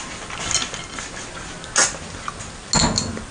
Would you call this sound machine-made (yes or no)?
no